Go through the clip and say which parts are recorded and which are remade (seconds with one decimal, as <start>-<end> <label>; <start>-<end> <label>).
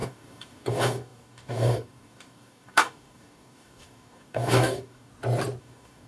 0.0-5.1 remade; 5.1-5.6 recorded; 5.6-6.1 remade